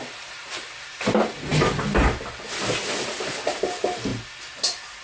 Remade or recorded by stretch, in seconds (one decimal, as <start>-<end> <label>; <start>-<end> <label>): 0.0-5.0 recorded